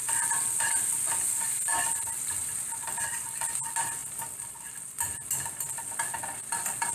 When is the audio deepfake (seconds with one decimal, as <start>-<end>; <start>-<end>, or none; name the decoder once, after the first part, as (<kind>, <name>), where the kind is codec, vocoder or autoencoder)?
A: none

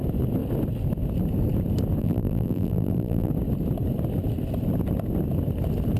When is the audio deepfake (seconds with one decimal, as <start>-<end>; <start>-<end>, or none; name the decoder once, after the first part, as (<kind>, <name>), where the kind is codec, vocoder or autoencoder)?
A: 2.0-3.3 (vocoder, BigVGAN v2)

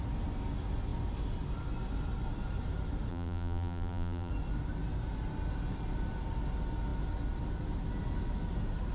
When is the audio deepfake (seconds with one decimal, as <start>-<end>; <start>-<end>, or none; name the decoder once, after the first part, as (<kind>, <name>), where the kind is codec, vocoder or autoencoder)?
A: 3.1-4.3 (vocoder, BigVGAN v2)

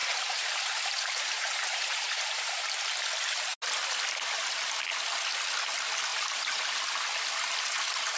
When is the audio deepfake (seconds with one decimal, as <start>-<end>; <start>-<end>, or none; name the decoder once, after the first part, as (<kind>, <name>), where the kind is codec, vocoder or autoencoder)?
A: 0.0-2.7 (vocoder, BigVGAN v2); 6.1-6.6

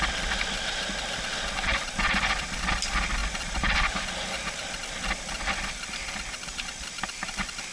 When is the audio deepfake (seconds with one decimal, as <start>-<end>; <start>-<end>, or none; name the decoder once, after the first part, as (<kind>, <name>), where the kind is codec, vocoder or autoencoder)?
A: 3.2-4.0 (vocoder, BigVGAN v2)

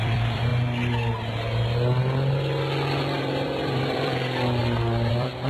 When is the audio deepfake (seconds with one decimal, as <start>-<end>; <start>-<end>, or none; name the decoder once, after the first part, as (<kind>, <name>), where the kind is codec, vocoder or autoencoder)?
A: 0.0-0.5 (vocoder, BigVGAN v2); 3.2-4.6; 5.1-5.5